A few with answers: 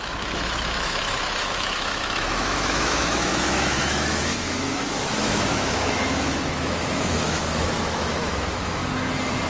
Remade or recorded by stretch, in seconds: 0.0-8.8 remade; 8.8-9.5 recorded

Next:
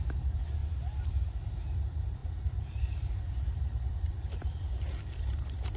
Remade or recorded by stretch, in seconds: 0.0-5.8 remade